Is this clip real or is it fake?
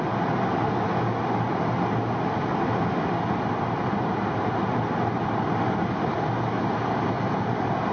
real